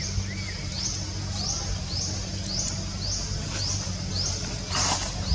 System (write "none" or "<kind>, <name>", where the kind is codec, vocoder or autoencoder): none